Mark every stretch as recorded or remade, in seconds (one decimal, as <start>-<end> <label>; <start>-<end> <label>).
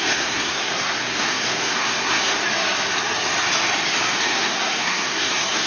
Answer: 0.0-2.4 remade; 2.4-4.2 recorded; 4.2-5.7 remade